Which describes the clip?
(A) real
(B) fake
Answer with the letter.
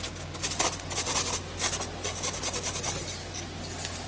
A